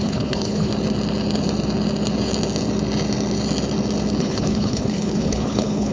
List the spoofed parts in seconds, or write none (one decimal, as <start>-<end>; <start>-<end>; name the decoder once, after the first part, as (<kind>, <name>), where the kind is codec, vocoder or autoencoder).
0.0-0.7 (codec, HILCodec); 4.2-5.9